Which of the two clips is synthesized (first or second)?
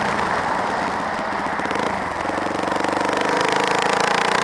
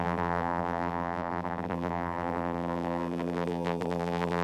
second